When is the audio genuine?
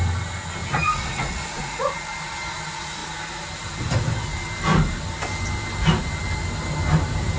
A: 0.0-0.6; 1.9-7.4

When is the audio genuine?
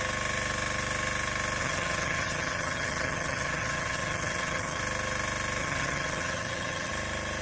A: 0.0-1.6; 4.8-5.6; 6.9-7.4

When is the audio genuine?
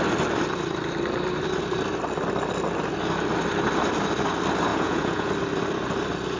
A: 0.0-4.7; 5.3-6.4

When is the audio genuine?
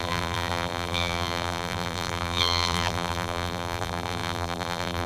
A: none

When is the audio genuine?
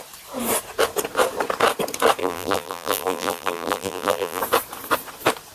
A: 0.0-2.2; 4.4-5.5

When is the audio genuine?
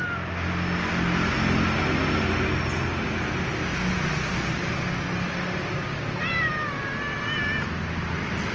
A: 0.0-8.5